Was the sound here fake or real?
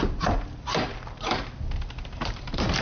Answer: fake